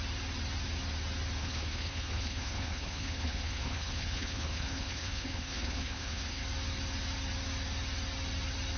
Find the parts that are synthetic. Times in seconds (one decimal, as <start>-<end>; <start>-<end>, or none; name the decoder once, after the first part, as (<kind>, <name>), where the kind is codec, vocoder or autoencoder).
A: 1.4-6.4 (codec, HILCodec)